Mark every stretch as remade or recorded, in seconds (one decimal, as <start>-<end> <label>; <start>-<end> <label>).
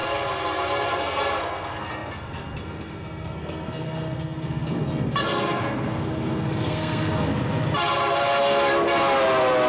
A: 0.0-0.9 recorded; 0.9-7.3 remade; 7.3-9.7 recorded